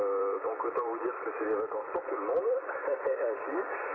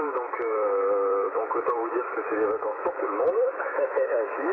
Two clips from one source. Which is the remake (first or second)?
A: second